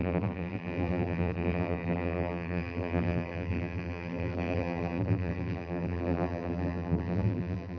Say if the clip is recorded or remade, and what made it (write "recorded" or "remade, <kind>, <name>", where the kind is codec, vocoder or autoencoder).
remade, vocoder, BigVGAN v2